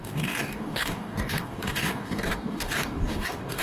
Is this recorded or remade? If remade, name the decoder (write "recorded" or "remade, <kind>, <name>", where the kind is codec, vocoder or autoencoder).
remade, codec, DAC